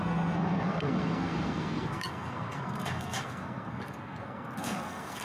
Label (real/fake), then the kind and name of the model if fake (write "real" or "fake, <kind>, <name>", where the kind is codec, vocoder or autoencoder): fake, codec, SNAC